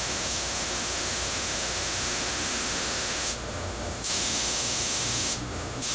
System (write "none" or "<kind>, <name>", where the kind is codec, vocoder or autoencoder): autoencoder, DAC-VAE